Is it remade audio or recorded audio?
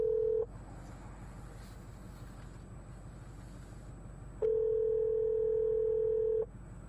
recorded